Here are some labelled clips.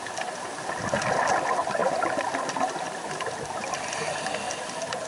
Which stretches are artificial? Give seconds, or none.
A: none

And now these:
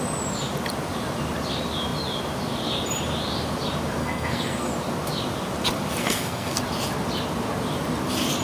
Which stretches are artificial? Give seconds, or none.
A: 4.0-4.7 (codec, SNAC); 6.0-6.6

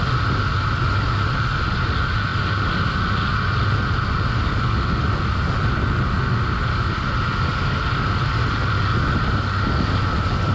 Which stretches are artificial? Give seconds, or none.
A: none